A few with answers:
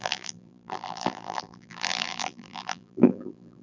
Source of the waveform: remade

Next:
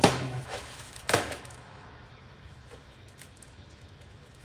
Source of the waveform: remade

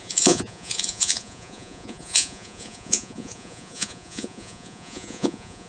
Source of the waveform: remade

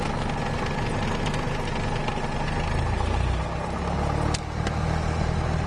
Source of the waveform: recorded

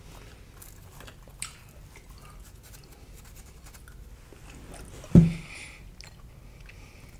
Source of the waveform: recorded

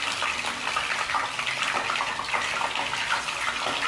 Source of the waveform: recorded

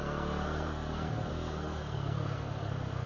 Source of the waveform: remade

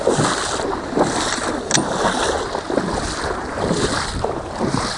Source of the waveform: recorded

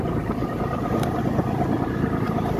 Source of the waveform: remade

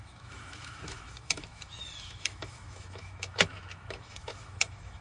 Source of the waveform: remade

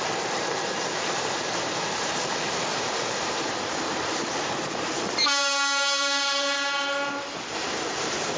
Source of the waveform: remade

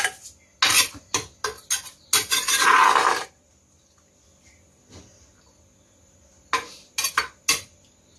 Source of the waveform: recorded